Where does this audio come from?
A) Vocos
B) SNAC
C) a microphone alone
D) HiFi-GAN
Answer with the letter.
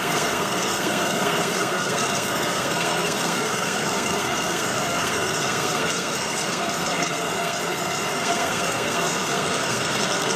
B